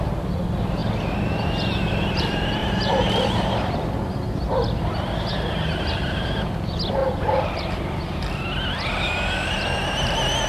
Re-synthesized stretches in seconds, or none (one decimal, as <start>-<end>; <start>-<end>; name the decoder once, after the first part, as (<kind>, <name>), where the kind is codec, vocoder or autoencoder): 2.6-3.5 (vocoder, BigVGAN v2)